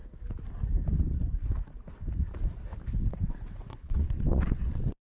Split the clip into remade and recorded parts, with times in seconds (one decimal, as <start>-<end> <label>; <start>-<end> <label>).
0.0-3.1 recorded; 3.1-5.1 remade